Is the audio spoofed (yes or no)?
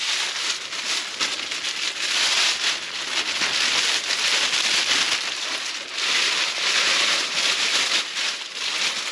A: no